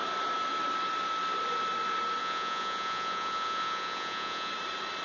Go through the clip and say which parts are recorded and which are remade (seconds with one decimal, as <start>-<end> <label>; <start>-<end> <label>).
0.0-2.2 recorded; 2.2-4.5 remade; 4.5-5.0 recorded